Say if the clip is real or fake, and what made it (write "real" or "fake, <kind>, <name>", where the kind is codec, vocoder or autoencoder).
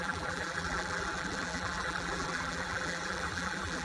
fake, vocoder, BigVGAN v2